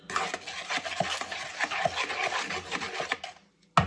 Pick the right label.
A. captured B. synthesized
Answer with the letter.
A